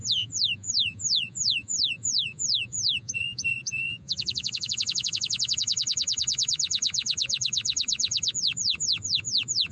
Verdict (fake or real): fake